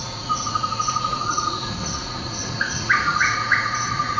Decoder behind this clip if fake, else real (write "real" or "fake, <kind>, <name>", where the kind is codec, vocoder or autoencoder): fake, vocoder, Vocos